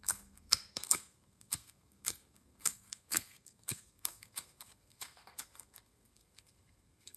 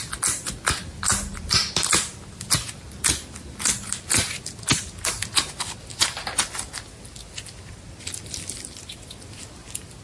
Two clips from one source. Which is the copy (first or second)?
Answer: first